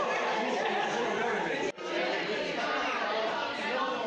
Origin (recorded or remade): remade